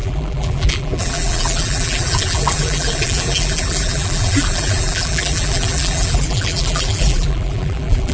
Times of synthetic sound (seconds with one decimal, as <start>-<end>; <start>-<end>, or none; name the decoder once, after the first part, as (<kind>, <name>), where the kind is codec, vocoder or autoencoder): 0.0-8.1 (vocoder, BigVGAN v2)